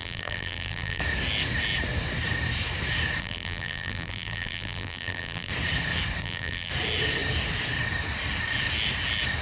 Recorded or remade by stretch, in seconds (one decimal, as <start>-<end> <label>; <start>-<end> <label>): 0.0-1.0 remade; 1.0-3.2 recorded; 3.2-5.5 remade; 5.5-6.2 recorded; 6.2-6.7 remade; 6.7-9.4 recorded